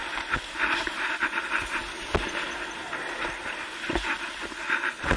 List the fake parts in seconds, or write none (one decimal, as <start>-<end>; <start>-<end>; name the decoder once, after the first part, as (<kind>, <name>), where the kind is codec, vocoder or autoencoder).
none